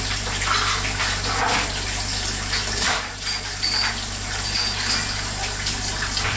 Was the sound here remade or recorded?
recorded